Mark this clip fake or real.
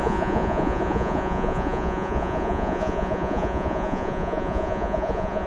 fake